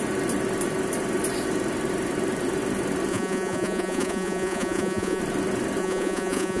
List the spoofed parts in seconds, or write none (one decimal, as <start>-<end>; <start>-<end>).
3.1-5.2; 5.8-6.6